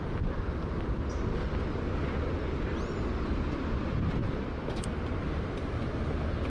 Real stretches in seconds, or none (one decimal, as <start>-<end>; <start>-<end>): 0.0-6.5